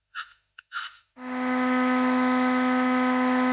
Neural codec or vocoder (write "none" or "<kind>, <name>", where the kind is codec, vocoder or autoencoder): autoencoder, DAC-VAE